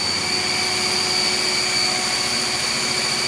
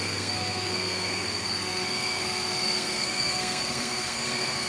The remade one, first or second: second